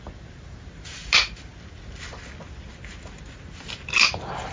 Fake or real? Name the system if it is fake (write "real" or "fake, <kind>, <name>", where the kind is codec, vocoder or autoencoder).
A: real